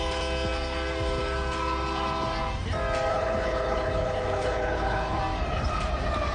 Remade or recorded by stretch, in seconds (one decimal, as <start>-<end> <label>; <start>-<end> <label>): 0.0-3.1 recorded; 3.1-5.2 remade; 5.2-6.3 recorded